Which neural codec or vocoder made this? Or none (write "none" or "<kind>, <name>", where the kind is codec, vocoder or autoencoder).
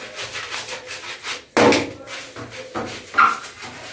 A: none